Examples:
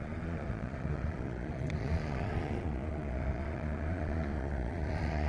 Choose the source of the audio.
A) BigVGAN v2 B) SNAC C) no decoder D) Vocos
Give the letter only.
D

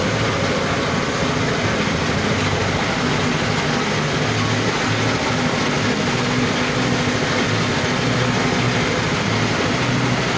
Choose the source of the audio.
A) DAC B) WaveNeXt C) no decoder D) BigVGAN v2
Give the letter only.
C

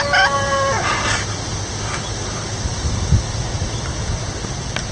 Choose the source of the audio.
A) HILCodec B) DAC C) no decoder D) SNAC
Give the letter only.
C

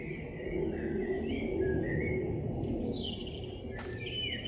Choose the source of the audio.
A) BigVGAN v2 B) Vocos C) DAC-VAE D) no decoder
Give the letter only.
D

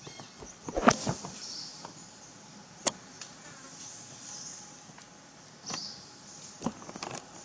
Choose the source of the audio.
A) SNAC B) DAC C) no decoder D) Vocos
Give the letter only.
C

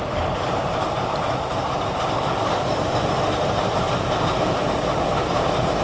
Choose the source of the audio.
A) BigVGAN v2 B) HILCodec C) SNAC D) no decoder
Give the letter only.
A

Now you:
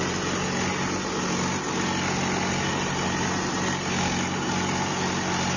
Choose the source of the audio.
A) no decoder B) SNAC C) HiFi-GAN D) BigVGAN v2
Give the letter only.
A